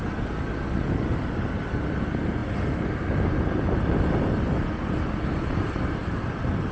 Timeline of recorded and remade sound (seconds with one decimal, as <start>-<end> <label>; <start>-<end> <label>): 0.0-6.7 recorded